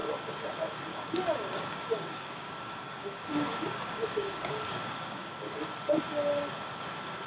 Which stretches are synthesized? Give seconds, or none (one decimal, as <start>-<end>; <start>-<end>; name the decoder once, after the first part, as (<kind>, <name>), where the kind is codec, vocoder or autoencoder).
0.9-5.3 (codec, DAC)